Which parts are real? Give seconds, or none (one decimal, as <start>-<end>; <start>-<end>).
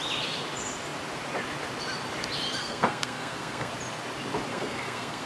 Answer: 0.0-2.6; 3.7-4.5